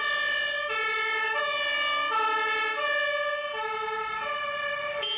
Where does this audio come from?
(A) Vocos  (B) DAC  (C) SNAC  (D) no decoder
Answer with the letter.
D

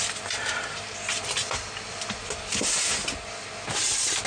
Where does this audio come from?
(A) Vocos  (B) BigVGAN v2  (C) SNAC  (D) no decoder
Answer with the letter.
D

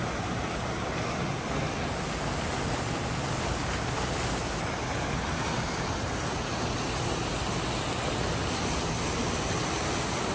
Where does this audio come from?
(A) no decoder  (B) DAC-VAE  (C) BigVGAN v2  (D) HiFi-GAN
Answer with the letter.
A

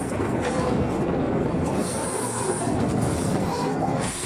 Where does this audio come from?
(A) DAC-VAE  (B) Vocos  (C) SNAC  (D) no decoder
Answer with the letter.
C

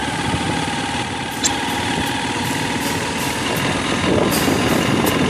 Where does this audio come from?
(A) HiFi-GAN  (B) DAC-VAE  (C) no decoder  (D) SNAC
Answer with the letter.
C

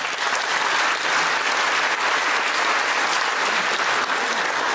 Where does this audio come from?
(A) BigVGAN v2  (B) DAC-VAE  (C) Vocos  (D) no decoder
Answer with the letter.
D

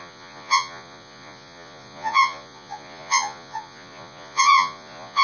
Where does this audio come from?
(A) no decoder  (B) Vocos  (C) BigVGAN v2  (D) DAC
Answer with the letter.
B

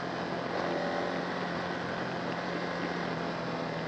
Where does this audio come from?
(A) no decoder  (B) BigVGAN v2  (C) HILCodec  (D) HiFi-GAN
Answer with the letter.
A